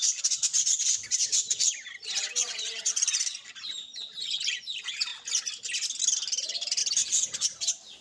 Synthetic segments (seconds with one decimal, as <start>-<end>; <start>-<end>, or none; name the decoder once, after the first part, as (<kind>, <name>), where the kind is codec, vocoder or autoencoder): 0.0-3.4 (vocoder, BigVGAN v2)